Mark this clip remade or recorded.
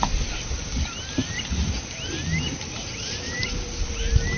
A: recorded